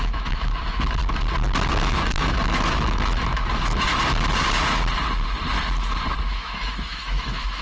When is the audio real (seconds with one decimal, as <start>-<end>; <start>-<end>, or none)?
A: 1.0-1.7; 3.9-6.2